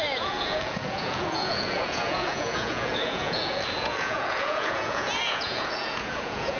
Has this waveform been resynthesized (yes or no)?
yes